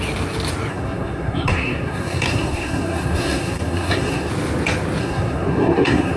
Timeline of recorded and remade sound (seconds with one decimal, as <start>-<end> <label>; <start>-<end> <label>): 0.0-0.7 recorded; 0.7-4.3 remade; 4.3-5.0 recorded; 5.0-6.2 remade